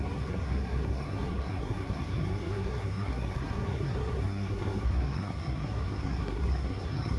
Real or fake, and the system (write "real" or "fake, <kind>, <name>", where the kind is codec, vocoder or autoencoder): fake, codec, SNAC